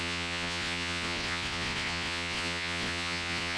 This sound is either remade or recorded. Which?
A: remade